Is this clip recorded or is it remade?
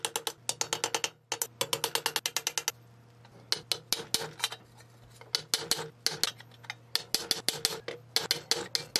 recorded